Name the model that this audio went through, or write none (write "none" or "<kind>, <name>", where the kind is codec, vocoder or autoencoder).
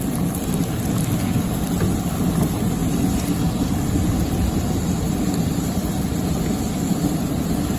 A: none